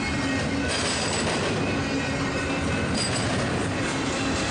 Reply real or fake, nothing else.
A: real